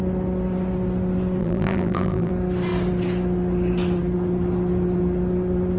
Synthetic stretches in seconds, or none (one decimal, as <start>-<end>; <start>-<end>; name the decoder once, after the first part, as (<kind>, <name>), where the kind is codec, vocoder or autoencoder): 1.4-2.3 (vocoder, BigVGAN v2)

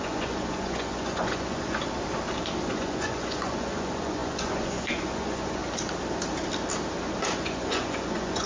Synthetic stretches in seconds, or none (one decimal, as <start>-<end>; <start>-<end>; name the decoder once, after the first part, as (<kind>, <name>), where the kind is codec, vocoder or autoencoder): 0.0-1.8 (vocoder, Vocos); 2.7-5.6; 7.4-8.5

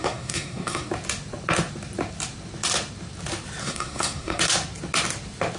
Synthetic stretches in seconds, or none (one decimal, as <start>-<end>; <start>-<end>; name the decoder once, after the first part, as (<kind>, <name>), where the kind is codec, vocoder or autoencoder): 0.0-0.9 (codec, SNAC); 3.6-4.4

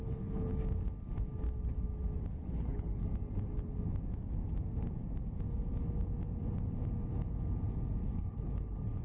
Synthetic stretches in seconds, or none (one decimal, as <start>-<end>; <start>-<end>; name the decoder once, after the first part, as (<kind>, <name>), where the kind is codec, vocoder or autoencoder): 0.0-0.5 (codec, HILCodec); 2.3-3.0; 8.0-9.0

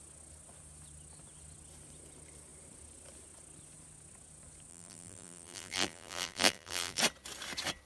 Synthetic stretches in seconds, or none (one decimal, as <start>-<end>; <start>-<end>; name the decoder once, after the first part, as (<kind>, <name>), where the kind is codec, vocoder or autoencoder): 4.7-7.0 (vocoder, BigVGAN v2)

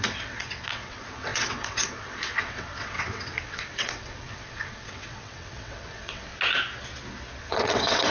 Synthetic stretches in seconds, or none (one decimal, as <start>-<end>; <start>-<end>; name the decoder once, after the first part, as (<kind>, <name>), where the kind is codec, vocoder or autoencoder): 0.0-6.3 (vocoder, WaveNeXt); 7.4-8.1

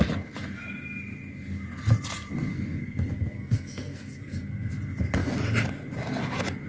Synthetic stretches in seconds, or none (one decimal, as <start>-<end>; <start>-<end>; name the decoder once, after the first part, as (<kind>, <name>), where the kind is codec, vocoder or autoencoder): 2.5-4.7 (codec, SNAC)

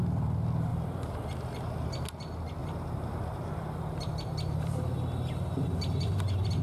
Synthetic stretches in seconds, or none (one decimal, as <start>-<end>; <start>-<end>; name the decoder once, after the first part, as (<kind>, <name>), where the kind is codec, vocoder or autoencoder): 0.7-1.9 (vocoder, BigVGAN v2); 2.6-6.6